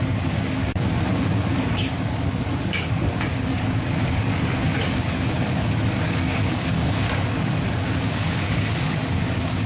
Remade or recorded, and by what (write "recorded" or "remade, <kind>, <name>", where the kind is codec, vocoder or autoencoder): remade, codec, DAC